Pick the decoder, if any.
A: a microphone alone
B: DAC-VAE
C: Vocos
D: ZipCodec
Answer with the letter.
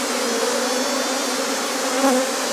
A